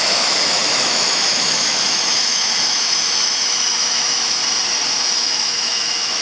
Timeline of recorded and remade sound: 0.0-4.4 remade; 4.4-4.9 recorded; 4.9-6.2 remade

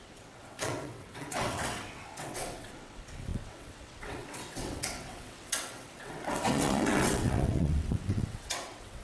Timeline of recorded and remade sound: 0.0-9.0 remade

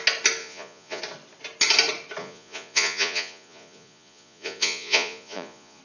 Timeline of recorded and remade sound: 0.0-0.4 recorded; 0.4-1.0 remade; 1.0-2.2 recorded; 2.2-5.8 remade